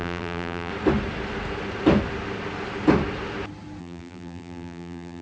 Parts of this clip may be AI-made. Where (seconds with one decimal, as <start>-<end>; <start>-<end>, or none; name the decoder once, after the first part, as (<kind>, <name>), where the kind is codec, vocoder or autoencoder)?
0.0-0.7 (vocoder, BigVGAN v2); 3.8-5.2